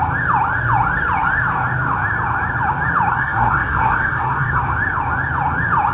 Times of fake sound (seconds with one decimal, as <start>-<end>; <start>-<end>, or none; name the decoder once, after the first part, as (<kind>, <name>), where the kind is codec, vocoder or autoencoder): 3.1-4.6 (codec, SNAC)